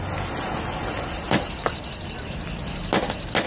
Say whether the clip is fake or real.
real